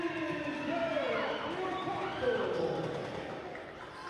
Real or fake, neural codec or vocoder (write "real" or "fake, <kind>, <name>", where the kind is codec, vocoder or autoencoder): real